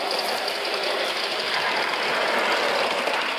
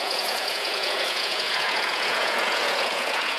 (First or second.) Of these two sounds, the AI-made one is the second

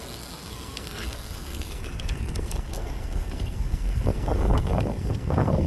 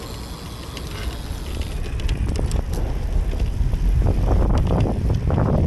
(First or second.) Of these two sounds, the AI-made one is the first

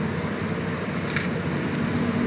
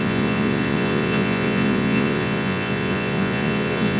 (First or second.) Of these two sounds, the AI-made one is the second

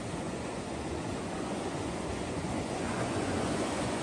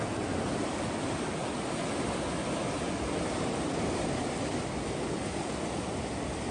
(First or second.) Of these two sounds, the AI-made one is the first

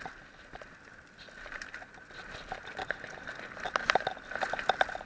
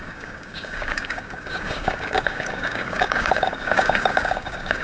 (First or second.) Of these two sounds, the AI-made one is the second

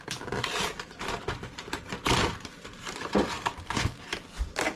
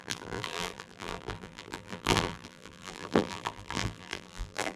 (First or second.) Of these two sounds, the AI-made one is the second